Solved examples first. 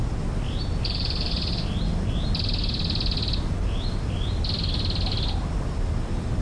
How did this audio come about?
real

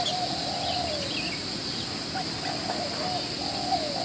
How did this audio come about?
real